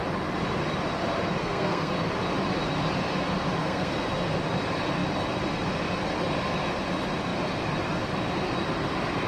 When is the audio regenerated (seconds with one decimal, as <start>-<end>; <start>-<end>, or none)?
1.4-1.9; 3.6-4.1